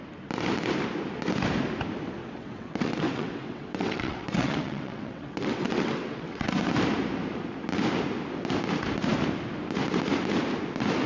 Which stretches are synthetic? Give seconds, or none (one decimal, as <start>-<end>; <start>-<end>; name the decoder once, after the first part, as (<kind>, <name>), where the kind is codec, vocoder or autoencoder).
2.2-6.5 (vocoder, WaveNeXt)